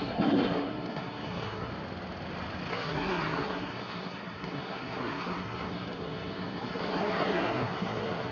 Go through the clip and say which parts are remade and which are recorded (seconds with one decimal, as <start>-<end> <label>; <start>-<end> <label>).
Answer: 0.0-1.7 remade; 1.7-2.7 recorded; 2.7-8.3 remade